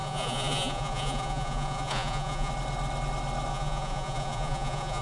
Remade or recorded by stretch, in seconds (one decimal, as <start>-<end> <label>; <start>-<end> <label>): 0.0-2.5 remade; 2.5-3.5 recorded; 3.5-5.0 remade